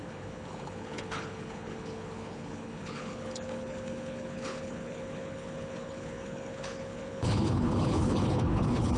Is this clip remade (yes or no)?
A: yes